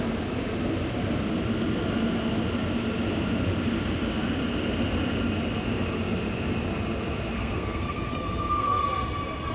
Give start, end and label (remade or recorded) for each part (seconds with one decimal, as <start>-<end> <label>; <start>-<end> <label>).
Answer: 0.0-7.4 recorded; 7.4-8.8 remade; 8.8-9.5 recorded